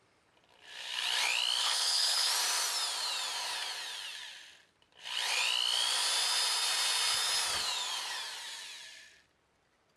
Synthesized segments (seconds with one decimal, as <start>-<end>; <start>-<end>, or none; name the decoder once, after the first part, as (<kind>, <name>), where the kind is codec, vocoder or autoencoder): 1.6-2.3 (codec, HILCodec)